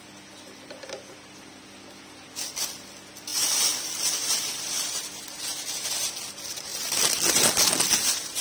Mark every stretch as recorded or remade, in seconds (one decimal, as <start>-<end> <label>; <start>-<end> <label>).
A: 0.0-3.3 recorded; 3.3-5.1 remade; 5.1-8.4 recorded